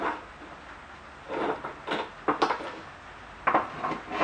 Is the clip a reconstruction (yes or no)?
no